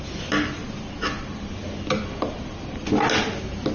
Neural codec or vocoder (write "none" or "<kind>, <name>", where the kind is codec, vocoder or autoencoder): none